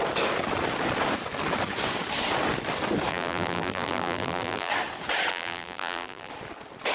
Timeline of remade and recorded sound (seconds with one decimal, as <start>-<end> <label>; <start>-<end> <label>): 0.0-3.1 recorded; 3.1-4.7 remade; 4.7-5.3 recorded; 5.3-6.3 remade; 6.3-6.9 recorded